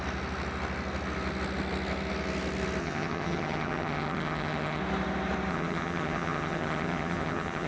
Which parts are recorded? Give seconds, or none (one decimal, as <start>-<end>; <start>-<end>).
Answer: 0.0-2.8; 4.8-5.5